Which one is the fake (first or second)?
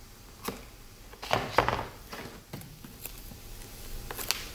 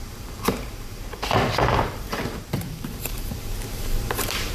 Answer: second